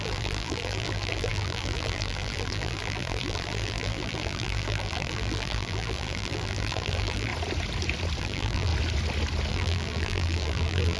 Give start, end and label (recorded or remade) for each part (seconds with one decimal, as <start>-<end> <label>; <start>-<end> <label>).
0.0-7.3 remade; 7.3-8.2 recorded; 8.2-8.7 remade; 8.7-9.5 recorded; 9.5-11.0 remade